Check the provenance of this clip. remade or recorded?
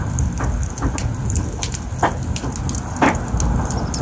recorded